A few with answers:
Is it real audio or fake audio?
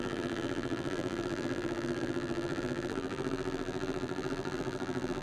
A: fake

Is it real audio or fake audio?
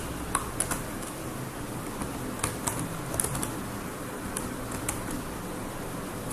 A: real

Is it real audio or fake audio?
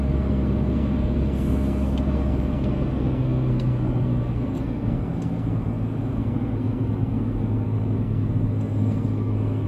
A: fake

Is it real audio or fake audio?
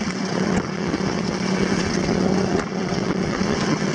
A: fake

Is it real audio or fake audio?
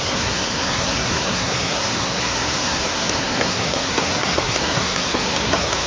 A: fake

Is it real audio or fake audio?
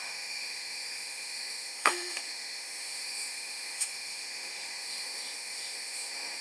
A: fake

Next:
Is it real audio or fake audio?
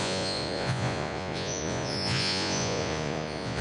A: fake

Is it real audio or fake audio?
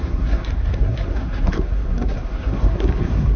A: fake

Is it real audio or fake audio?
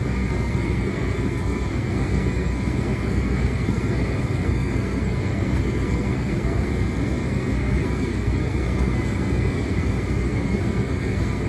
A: fake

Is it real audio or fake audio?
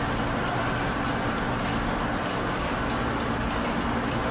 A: real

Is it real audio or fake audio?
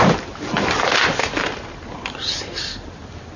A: real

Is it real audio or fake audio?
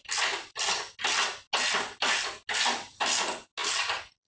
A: real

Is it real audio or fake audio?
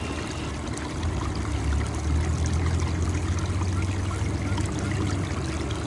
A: real